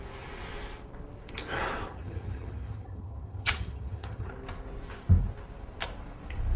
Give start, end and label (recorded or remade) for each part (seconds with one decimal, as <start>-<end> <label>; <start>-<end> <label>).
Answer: 0.0-1.9 recorded; 1.9-4.3 remade; 4.3-6.6 recorded